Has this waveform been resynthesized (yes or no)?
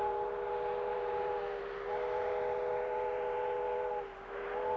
no